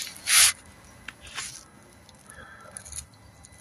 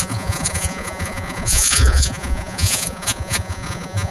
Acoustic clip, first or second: first